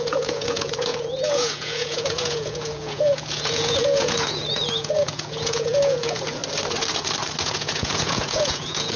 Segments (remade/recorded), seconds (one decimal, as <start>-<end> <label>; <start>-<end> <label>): 0.0-6.4 remade; 6.4-7.4 recorded; 7.4-9.0 remade